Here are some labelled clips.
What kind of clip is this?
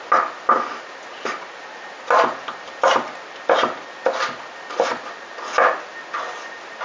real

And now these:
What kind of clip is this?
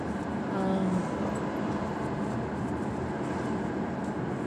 real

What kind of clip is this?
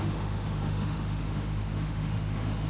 fake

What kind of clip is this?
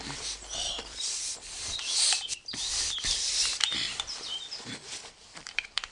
fake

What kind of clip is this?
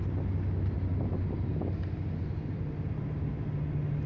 real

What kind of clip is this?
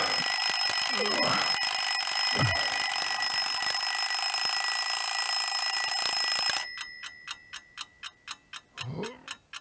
real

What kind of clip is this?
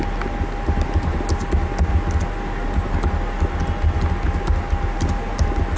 real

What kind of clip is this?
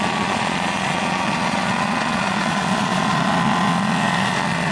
fake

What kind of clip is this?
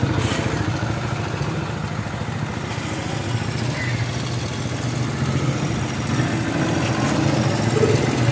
real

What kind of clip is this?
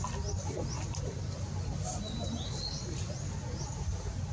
real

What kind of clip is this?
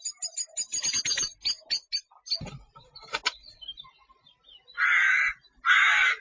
real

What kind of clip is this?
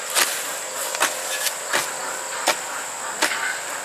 real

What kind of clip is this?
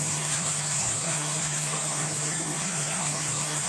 fake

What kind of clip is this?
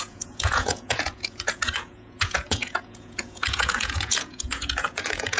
fake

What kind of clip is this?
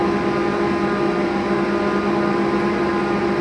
real